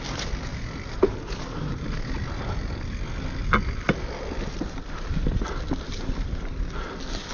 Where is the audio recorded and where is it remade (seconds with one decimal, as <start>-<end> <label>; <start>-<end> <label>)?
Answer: 0.0-7.3 recorded